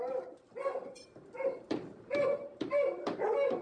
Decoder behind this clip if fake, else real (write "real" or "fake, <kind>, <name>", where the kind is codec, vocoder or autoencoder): fake, vocoder, BigVGAN v2